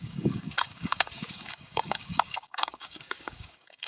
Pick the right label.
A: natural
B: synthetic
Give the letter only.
B